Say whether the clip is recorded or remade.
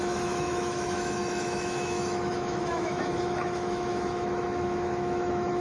remade